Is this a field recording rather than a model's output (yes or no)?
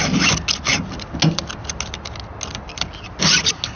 yes